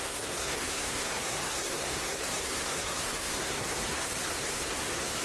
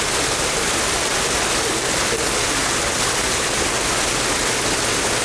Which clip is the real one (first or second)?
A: second